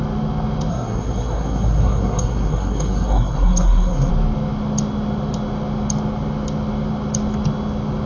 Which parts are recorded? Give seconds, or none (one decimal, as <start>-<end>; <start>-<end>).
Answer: 0.0-0.7; 4.1-8.1